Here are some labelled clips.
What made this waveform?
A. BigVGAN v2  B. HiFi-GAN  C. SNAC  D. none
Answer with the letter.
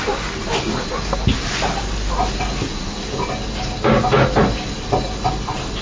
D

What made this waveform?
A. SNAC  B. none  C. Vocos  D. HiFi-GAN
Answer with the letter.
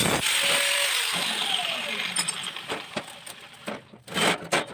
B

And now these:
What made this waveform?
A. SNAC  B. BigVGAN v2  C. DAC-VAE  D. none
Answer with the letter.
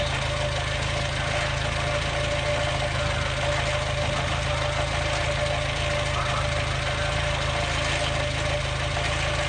D